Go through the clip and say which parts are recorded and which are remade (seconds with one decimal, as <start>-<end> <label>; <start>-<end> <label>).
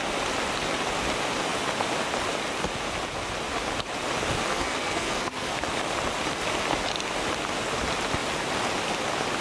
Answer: 0.0-4.5 recorded; 4.5-5.5 remade; 5.5-9.4 recorded